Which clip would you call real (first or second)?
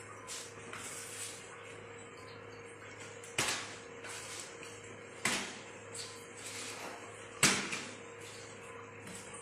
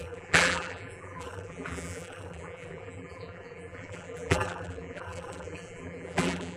first